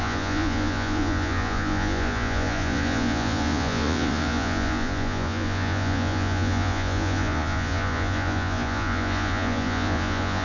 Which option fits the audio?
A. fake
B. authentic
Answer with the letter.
A